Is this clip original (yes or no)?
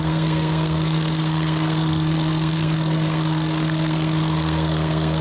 no